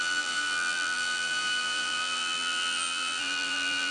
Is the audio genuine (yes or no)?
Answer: no